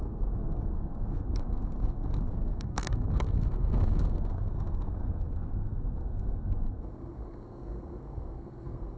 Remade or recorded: remade